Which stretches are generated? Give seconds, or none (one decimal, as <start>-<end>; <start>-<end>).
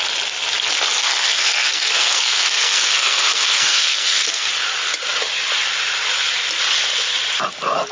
1.0-4.5